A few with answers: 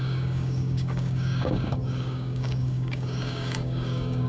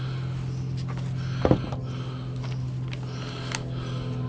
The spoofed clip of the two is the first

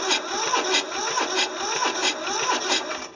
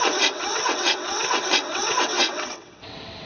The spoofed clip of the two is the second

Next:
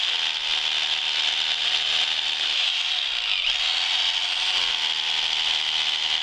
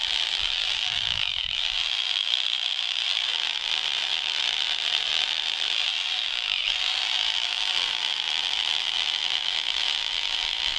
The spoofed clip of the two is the second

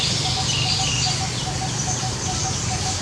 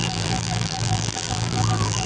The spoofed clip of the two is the second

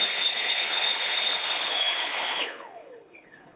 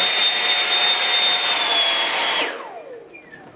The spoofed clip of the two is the first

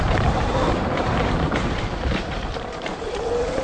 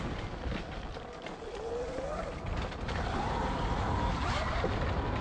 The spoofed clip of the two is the first